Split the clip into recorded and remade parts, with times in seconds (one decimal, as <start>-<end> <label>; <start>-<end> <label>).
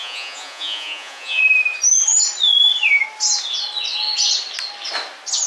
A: 0.0-1.4 remade; 1.4-5.5 recorded